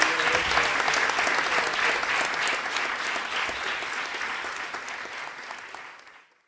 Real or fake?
real